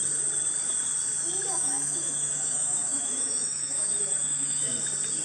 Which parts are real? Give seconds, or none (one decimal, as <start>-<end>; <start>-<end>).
0.0-1.5; 4.6-5.2